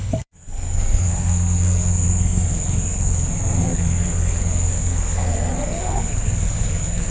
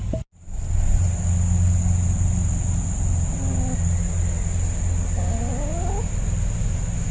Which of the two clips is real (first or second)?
second